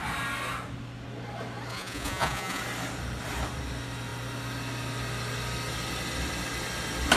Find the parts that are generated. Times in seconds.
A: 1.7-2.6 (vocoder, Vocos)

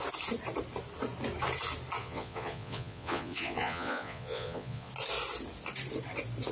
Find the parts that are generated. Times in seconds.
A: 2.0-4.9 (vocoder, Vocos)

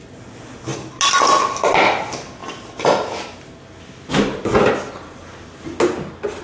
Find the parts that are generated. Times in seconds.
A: none